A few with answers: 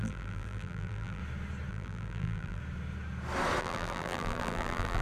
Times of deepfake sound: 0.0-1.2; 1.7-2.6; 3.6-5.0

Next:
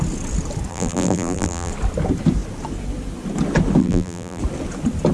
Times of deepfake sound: 0.7-1.7; 3.8-4.4

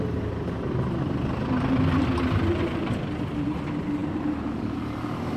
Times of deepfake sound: 0.0-1.4; 3.3-5.4

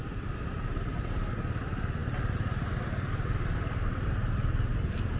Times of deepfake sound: 2.0-2.7

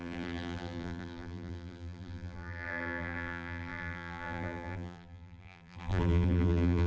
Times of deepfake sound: 0.0-6.9

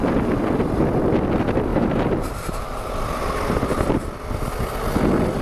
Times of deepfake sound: 1.7-2.9

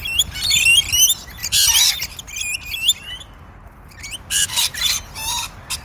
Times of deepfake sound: none